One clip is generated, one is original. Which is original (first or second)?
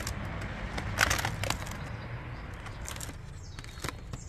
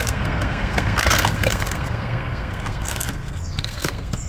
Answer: first